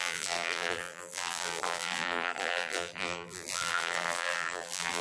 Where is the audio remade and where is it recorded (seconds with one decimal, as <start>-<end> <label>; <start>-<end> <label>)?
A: 0.0-5.0 remade